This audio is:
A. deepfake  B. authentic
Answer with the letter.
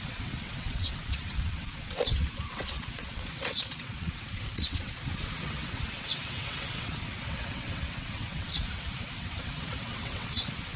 A